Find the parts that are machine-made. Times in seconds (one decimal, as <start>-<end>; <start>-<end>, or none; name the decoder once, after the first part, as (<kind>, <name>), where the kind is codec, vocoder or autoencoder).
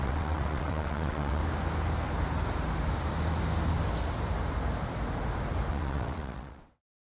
0.0-1.4 (vocoder, WaveNeXt); 5.7-7.1